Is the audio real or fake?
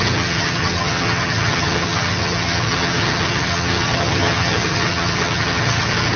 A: fake